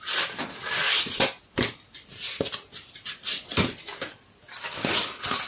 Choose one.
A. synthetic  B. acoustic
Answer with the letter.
B